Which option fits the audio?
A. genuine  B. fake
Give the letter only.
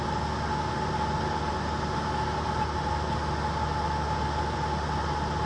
A